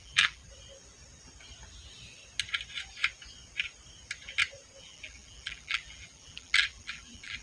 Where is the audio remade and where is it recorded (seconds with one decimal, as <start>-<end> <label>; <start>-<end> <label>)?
0.0-0.4 remade; 0.4-4.8 recorded; 4.8-7.4 remade